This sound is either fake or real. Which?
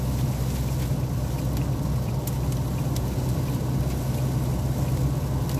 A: real